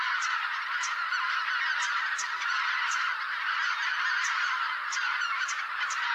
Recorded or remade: recorded